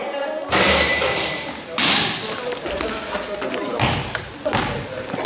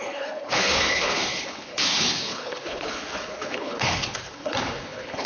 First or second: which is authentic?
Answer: first